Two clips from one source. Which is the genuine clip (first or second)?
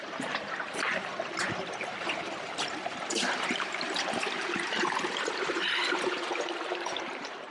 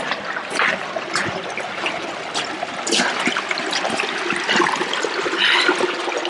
second